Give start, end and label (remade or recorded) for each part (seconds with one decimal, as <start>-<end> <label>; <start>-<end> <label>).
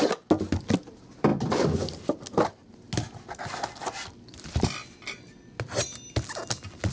0.0-6.9 recorded